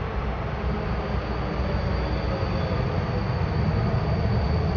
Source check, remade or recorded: recorded